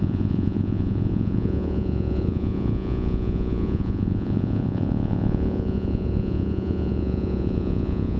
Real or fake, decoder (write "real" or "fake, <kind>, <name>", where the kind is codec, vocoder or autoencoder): fake, vocoder, Vocos